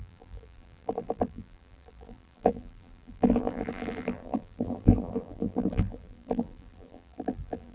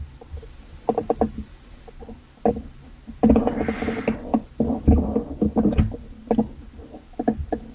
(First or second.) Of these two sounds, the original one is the second